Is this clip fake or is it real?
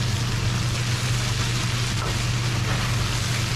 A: real